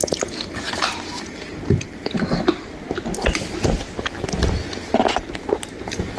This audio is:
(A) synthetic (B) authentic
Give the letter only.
B